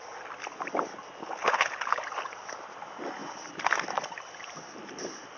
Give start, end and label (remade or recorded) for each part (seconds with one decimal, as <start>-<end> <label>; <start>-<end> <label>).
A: 0.0-1.2 recorded; 1.2-2.0 remade; 2.0-5.4 recorded